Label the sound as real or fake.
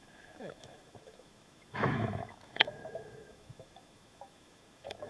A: fake